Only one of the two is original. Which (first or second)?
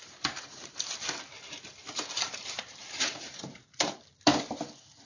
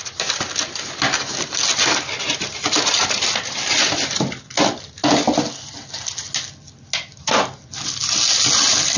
second